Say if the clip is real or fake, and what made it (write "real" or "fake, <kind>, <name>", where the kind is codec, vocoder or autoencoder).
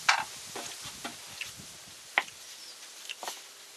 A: real